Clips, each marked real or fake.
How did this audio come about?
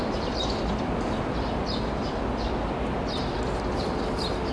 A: real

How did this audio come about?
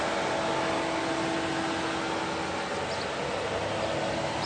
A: real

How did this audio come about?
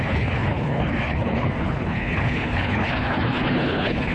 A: fake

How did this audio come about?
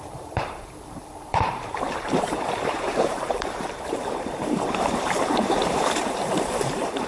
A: fake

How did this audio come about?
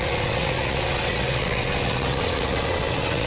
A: fake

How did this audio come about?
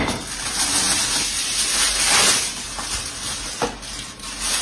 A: real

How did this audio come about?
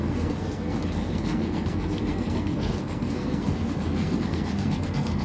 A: fake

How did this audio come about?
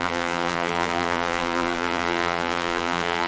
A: fake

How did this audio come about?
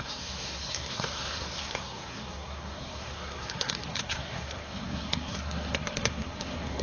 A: fake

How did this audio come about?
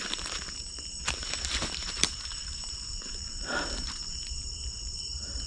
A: fake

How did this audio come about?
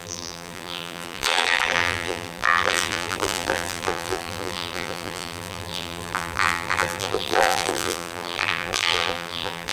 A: fake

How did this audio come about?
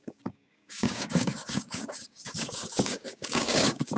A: fake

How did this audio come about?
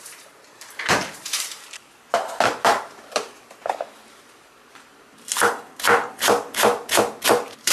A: fake